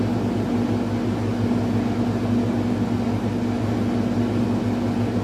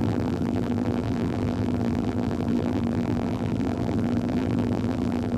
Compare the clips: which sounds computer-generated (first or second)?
second